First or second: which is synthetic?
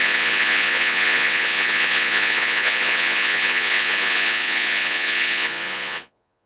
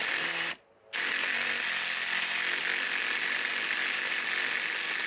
first